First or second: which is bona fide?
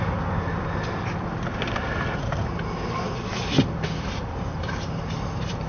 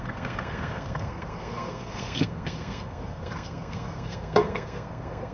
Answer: first